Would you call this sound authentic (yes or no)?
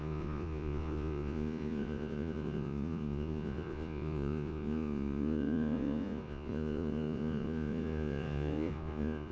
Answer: no